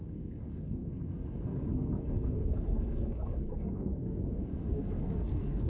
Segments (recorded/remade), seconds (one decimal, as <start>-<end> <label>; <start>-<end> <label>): 0.0-5.7 remade